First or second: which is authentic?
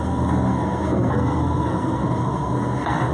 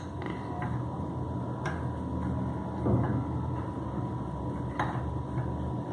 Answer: second